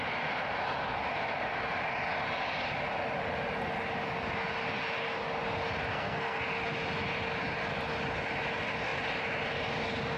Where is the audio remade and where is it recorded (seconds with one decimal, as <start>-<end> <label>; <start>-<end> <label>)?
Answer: 0.0-5.9 recorded; 5.9-6.4 remade; 6.4-10.2 recorded